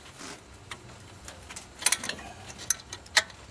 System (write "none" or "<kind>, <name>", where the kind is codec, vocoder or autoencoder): none